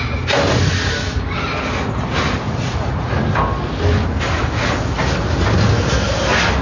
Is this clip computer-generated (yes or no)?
no